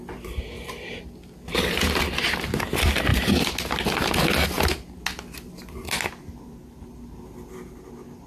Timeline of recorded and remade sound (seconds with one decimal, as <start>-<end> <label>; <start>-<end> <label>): 0.0-8.3 recorded